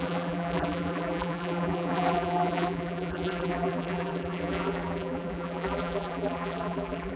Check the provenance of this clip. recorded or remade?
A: remade